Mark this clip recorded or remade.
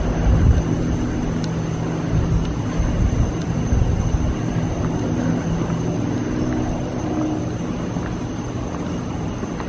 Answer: recorded